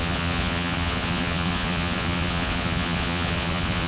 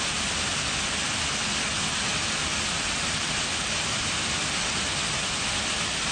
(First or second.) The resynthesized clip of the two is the first